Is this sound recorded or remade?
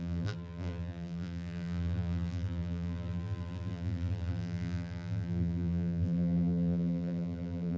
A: remade